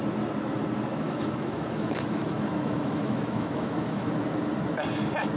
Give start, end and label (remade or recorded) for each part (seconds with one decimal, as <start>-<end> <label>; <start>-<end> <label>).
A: 0.0-0.9 recorded; 0.9-4.1 remade; 4.1-5.4 recorded